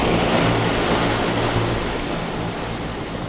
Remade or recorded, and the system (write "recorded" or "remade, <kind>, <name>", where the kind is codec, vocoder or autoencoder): recorded